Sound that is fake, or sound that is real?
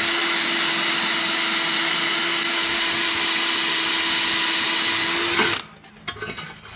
real